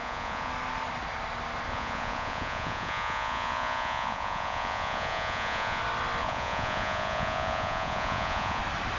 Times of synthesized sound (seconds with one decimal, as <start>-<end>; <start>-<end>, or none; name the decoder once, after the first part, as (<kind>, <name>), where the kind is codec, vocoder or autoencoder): 0.0-0.5 (vocoder, Vocos); 1.7-5.8; 6.2-8.6